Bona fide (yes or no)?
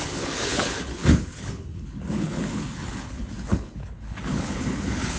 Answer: no